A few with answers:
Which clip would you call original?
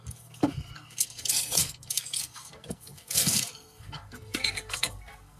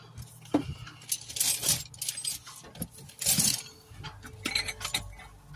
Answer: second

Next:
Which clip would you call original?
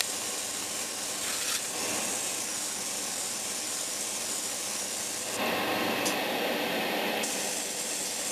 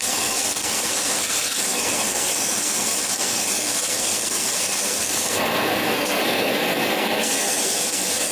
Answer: first